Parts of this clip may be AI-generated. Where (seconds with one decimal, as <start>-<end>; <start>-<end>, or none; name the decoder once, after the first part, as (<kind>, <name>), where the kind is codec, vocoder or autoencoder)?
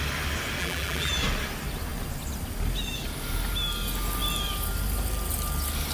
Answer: 0.6-1.1 (vocoder, BigVGAN v2)